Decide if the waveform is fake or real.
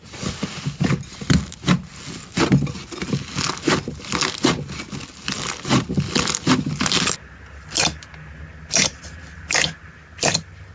real